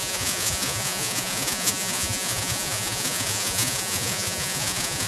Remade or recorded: remade